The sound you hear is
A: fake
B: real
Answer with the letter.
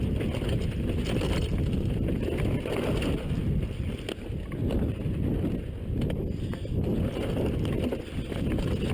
B